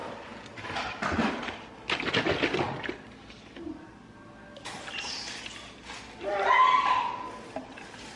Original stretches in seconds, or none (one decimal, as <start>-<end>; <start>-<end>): 0.0-8.2